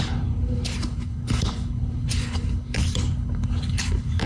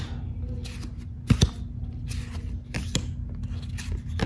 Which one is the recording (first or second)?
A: second